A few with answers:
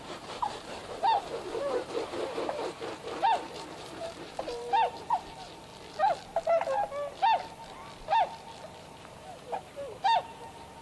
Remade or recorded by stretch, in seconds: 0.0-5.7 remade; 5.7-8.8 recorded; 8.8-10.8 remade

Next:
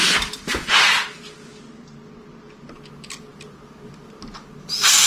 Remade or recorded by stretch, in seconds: 0.0-3.3 recorded; 3.3-5.1 remade

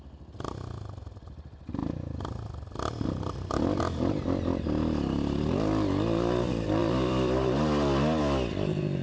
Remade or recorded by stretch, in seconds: 0.0-6.8 recorded; 6.8-8.2 remade; 8.2-9.0 recorded